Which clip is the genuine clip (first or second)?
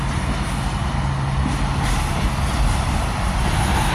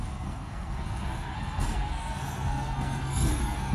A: first